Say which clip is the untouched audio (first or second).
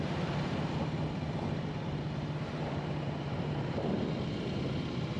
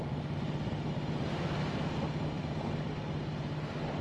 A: second